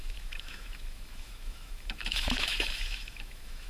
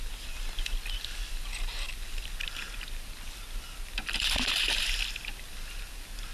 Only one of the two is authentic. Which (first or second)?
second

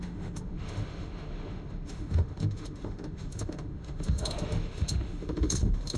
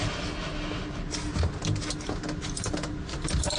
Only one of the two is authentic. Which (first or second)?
second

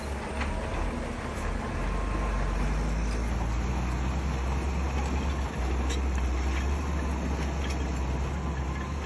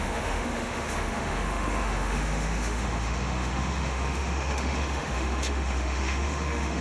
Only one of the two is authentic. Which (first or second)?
first